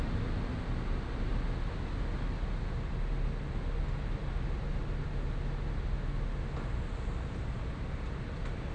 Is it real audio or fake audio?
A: real